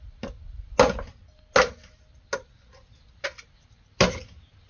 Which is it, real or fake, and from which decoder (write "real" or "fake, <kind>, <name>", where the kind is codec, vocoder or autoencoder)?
real